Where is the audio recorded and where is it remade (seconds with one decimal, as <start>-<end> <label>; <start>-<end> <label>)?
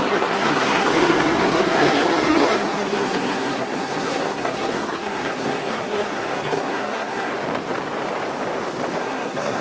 0.0-7.3 remade; 7.3-9.0 recorded; 9.0-9.6 remade